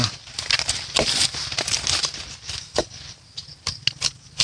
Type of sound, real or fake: real